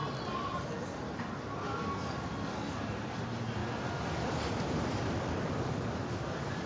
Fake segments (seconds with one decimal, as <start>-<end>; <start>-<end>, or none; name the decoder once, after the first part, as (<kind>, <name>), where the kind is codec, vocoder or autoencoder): 2.6-3.2 (vocoder, BigVGAN v2)